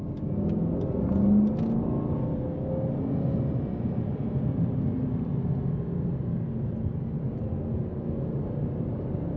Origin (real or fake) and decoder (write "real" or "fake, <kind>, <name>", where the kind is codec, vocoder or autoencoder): real